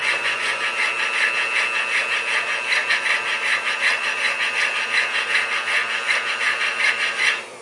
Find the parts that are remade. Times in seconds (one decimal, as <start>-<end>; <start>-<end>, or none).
0.0-0.6